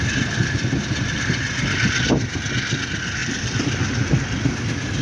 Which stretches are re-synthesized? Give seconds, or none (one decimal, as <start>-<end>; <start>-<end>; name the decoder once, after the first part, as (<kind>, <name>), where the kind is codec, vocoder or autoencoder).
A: 3.2-3.9 (vocoder, BigVGAN v2)